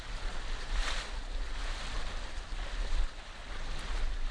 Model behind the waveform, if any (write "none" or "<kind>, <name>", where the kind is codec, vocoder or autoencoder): none